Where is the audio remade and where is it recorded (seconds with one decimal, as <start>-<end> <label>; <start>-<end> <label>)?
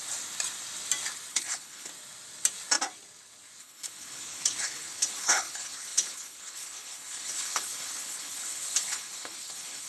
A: 0.0-1.3 recorded; 1.3-1.9 remade; 1.9-3.6 recorded; 3.6-9.9 remade